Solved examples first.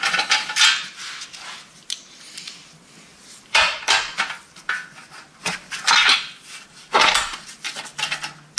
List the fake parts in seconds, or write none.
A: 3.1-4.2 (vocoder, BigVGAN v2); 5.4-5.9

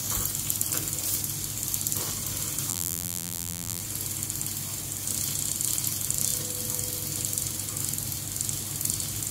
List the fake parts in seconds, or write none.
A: 2.7-3.8 (vocoder, BigVGAN v2)

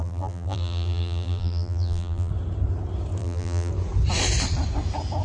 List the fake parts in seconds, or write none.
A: 0.0-2.3 (vocoder, BigVGAN v2); 3.2-3.7